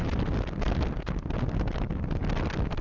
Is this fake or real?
real